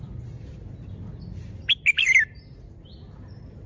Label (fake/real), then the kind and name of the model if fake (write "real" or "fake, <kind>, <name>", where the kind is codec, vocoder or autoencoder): real